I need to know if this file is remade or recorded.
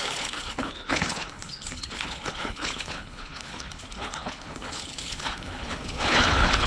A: remade